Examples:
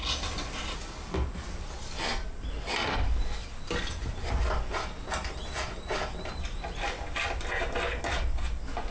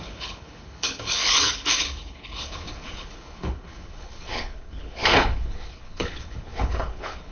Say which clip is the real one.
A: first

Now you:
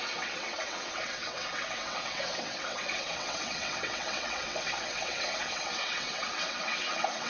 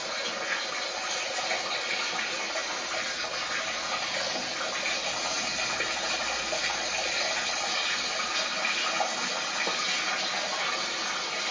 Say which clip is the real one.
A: second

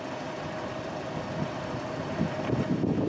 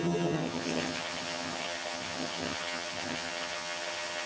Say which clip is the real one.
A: first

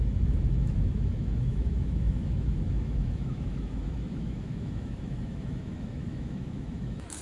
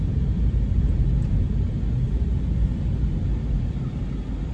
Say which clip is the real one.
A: second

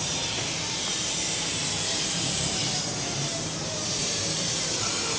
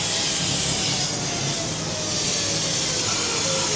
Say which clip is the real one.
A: second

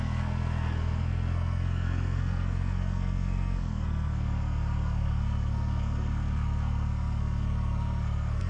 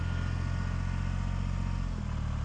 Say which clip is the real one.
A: second